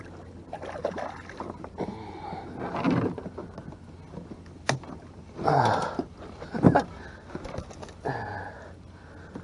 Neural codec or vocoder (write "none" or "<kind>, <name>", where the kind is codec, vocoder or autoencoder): none